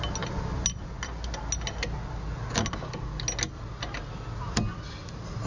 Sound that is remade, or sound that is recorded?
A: recorded